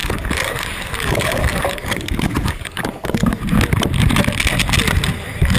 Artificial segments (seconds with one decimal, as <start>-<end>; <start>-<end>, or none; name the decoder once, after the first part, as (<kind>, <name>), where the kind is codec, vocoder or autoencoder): 0.0-3.4 (codec, DAC)